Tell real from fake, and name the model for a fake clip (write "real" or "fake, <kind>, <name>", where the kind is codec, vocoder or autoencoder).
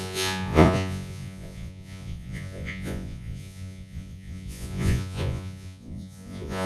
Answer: fake, vocoder, Vocos